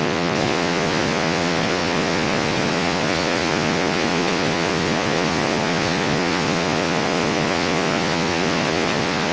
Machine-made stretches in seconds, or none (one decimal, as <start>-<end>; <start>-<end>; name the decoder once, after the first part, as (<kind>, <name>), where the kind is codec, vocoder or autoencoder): 0.0-9.3 (vocoder, Vocos)